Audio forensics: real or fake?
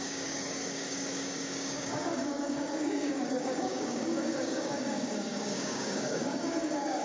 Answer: fake